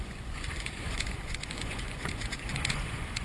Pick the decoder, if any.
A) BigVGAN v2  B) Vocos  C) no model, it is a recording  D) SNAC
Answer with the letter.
B